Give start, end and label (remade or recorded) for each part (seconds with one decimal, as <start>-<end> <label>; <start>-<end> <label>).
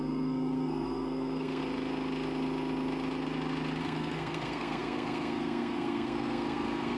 0.0-1.6 remade; 1.6-3.8 recorded; 3.8-7.0 remade